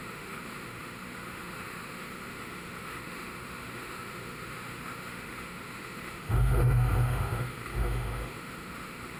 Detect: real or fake fake